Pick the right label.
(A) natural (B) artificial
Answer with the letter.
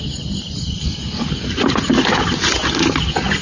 A